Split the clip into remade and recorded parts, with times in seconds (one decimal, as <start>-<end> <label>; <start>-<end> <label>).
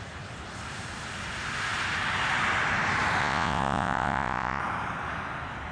0.0-3.2 recorded; 3.2-4.6 remade; 4.6-5.7 recorded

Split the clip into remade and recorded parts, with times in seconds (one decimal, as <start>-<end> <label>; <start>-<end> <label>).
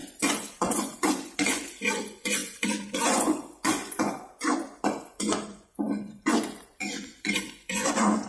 0.0-8.3 remade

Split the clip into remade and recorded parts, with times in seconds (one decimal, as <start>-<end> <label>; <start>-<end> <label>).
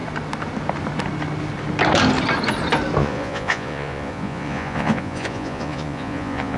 0.0-3.0 recorded; 3.0-6.6 remade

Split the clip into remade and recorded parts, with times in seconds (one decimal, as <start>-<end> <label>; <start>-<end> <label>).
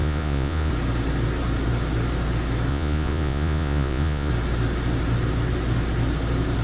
0.0-0.7 remade; 0.7-2.7 recorded; 2.7-4.3 remade; 4.3-6.6 recorded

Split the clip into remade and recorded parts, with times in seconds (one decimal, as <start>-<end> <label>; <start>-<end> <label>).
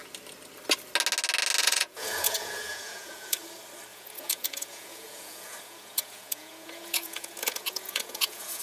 0.0-1.6 recorded; 1.6-3.4 remade; 3.4-3.9 recorded; 3.9-8.6 remade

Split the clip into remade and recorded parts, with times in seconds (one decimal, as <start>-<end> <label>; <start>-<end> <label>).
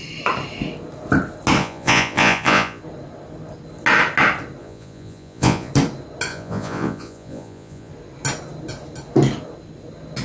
0.0-1.6 recorded; 1.6-2.8 remade; 2.8-4.6 recorded; 4.6-5.7 remade; 5.7-6.3 recorded; 6.3-7.9 remade; 7.9-10.2 recorded